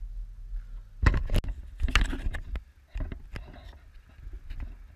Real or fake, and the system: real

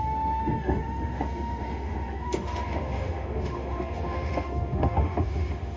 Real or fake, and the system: fake, autoencoder, DAC-VAE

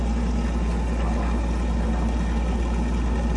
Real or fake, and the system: real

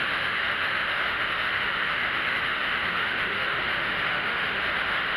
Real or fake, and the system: fake, autoencoder, DAC-VAE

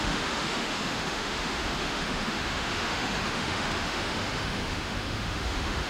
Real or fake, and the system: fake, autoencoder, DAC-VAE